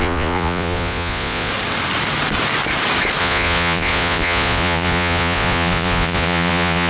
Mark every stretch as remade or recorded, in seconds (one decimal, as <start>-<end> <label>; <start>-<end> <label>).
0.0-1.5 remade; 1.5-3.2 recorded; 3.2-6.9 remade